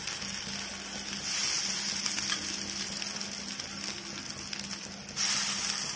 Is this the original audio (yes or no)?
yes